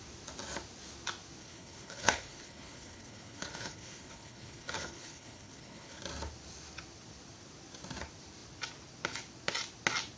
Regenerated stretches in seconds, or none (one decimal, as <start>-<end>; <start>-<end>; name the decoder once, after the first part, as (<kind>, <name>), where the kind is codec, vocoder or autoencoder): 1.4-6.0 (codec, HILCodec)